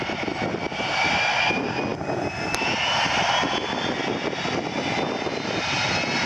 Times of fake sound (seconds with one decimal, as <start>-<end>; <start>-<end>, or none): none